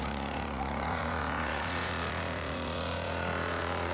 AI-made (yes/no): yes